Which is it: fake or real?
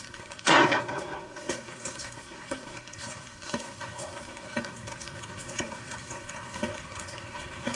fake